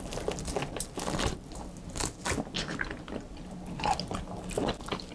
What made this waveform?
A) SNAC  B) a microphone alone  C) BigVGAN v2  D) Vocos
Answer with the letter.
B